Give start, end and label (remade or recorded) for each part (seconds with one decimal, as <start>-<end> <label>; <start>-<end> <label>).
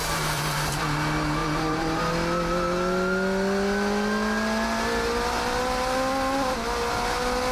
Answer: 0.0-0.8 remade; 0.8-1.4 recorded; 1.4-2.0 remade; 2.0-7.5 recorded